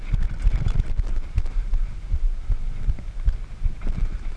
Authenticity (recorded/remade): recorded